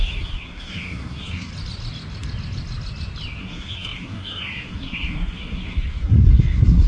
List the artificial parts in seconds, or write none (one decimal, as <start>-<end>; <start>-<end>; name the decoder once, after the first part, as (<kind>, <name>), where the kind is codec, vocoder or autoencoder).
0.0-1.5 (codec, SNAC); 3.4-6.9